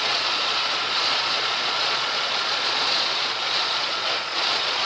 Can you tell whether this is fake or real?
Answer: fake